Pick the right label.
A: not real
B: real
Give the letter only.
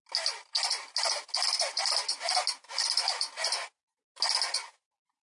B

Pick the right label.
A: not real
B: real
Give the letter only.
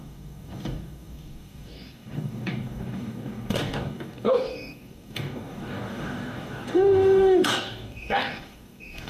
A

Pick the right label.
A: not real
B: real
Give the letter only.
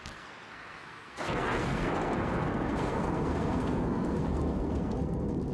A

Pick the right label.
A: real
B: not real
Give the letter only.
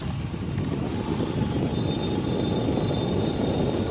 A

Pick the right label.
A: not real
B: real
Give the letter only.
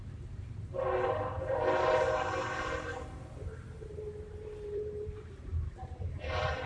A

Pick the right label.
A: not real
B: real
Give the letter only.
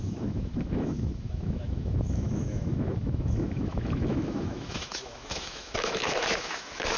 A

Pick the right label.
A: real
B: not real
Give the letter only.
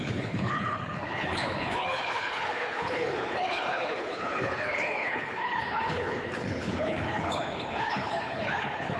B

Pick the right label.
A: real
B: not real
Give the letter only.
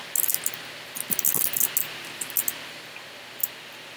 A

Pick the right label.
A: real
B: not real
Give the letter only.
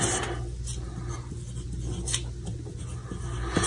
A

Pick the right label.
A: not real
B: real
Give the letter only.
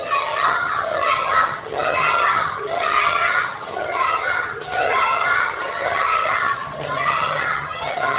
A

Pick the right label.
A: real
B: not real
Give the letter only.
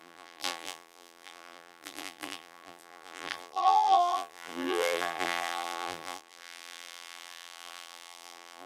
B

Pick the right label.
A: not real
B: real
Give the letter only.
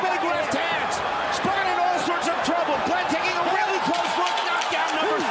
B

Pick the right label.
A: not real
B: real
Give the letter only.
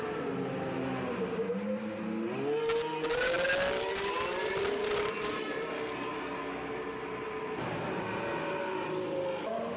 B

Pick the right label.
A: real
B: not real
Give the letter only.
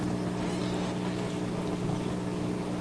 A